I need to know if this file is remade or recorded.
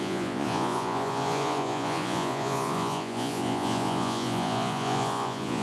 remade